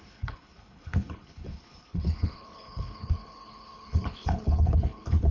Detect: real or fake fake